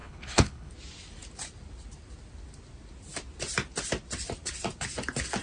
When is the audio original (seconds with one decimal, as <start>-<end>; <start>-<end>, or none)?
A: 0.7-5.4